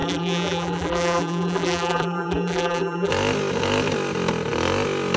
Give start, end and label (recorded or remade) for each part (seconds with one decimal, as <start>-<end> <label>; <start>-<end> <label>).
0.0-3.1 remade; 3.1-5.2 recorded